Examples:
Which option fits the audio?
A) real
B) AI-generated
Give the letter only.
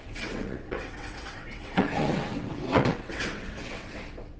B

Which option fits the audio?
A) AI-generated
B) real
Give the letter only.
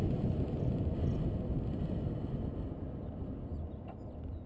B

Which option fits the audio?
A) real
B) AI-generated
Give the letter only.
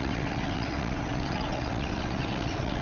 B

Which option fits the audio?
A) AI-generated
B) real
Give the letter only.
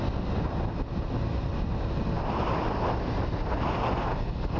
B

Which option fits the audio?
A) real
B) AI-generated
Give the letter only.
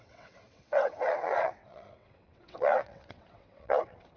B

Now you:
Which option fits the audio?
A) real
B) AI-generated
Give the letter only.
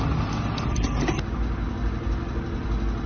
A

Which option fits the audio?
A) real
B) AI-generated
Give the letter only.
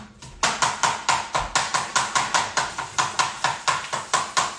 A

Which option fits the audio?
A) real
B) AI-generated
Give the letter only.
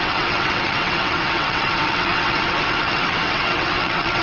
B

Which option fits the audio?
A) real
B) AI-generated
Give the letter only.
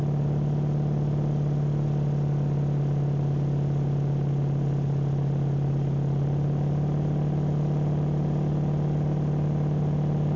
A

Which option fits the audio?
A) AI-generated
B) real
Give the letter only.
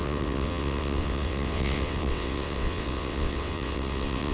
A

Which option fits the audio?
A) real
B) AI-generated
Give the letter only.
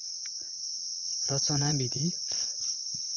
B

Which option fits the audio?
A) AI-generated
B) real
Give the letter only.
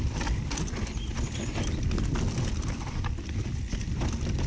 B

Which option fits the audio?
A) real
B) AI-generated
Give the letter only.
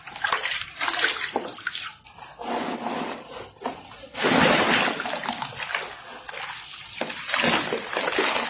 A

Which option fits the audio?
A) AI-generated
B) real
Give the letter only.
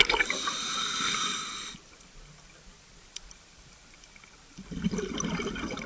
B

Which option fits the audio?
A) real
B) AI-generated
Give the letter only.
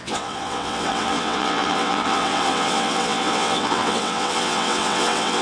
B